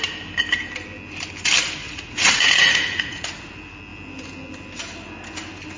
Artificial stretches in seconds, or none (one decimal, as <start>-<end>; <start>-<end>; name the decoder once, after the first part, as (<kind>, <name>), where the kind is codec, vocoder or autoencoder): 1.8-3.5 (vocoder, Vocos)

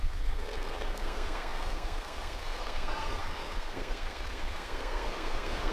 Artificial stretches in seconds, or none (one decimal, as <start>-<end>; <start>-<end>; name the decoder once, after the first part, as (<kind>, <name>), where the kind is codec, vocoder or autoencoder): 0.0-5.7 (codec, SNAC)

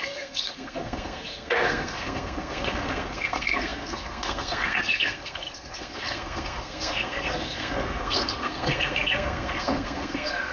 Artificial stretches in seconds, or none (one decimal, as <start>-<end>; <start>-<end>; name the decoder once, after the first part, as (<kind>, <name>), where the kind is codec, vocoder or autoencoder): 0.0-10.5 (codec, SNAC)

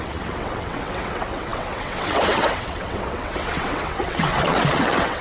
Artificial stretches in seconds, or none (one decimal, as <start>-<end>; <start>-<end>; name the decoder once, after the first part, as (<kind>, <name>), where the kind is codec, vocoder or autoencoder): 0.0-5.2 (vocoder, WaveNeXt)

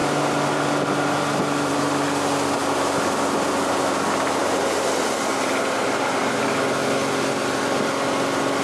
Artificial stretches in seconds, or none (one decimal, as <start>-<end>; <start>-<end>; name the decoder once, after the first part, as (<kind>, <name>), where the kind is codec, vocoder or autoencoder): none

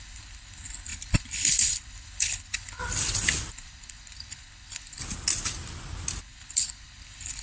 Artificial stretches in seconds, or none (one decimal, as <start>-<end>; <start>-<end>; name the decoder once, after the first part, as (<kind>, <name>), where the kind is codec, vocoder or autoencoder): 0.0-2.8 (codec, HILCodec); 3.5-5.0; 6.2-7.4

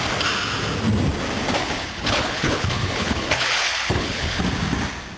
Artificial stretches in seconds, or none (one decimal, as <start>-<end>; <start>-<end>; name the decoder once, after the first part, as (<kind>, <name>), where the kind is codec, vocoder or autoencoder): 1.6-4.4 (codec, HILCodec)